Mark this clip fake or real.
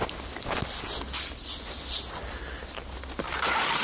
real